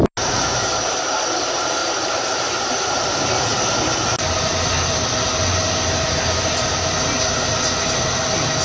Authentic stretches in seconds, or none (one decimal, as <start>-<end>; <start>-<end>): 0.0-1.8; 2.7-8.6